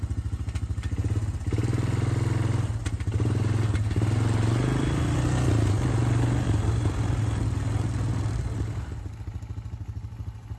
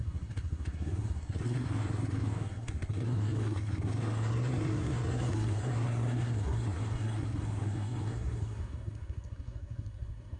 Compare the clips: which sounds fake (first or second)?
second